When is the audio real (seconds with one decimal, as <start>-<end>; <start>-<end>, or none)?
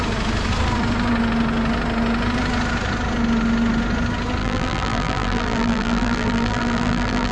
0.0-4.4